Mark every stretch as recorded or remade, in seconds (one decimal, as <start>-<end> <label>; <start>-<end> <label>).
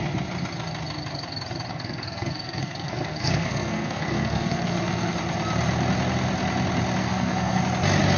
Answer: 0.0-1.7 recorded; 1.7-5.1 remade; 5.1-7.0 recorded; 7.0-7.6 remade; 7.6-8.2 recorded